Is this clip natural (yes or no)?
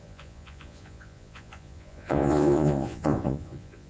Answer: no